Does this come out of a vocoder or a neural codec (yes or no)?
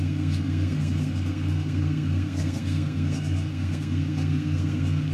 yes